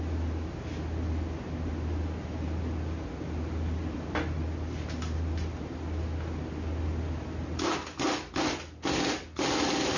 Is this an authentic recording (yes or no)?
yes